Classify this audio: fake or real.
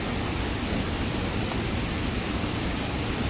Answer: real